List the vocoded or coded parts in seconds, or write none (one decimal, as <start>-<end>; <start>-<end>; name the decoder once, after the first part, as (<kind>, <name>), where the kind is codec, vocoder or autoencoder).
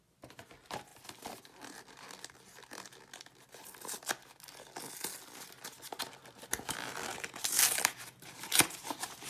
7.1-9.3 (vocoder, BigVGAN v2)